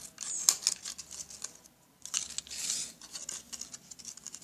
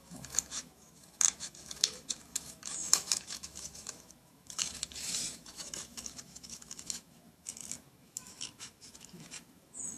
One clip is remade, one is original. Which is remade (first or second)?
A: second